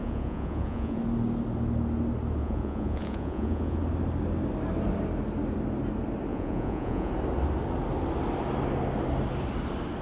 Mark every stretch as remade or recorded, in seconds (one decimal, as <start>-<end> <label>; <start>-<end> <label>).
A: 0.0-1.0 remade; 1.0-2.4 recorded; 2.4-3.8 remade; 3.8-6.3 recorded; 6.3-7.1 remade; 7.1-10.0 recorded